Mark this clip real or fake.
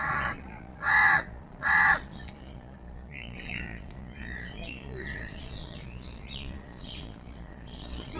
fake